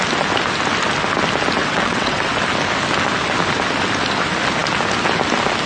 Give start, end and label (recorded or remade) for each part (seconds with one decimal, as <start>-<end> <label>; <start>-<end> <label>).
0.0-1.6 recorded; 1.6-2.3 remade; 2.3-5.7 recorded